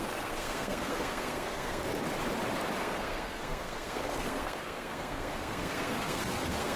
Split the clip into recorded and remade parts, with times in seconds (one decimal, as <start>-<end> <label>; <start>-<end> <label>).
0.0-1.9 remade; 1.9-2.8 recorded; 2.8-6.8 remade